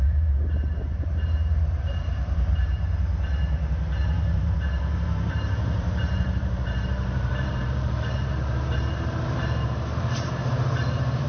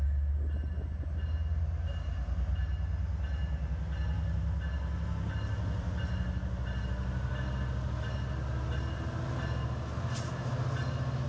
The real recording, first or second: second